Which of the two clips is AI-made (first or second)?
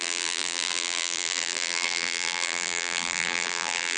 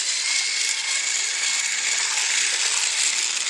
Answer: first